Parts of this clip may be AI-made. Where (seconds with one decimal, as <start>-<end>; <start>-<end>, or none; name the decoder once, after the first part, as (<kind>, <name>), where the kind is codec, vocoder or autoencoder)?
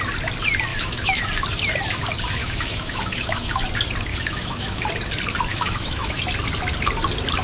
0.7-1.2 (autoencoder, DAC-VAE); 2.4-3.6; 4.1-4.9; 5.5-6.2